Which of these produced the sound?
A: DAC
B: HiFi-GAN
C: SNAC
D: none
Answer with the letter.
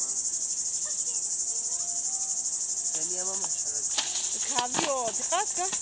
D